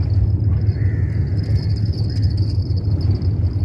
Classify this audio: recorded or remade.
recorded